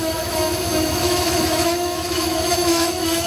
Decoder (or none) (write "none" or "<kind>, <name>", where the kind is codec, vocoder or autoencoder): autoencoder, DAC-VAE